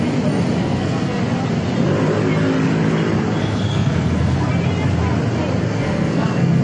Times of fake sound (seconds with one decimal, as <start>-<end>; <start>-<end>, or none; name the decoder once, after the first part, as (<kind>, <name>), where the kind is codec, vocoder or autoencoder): 0.6-1.2 (codec, SNAC); 3.4-4.5; 5.7-6.6